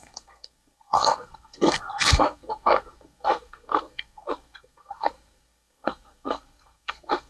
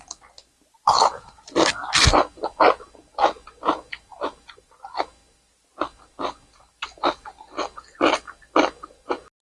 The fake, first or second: first